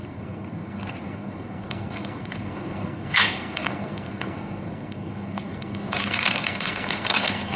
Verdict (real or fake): fake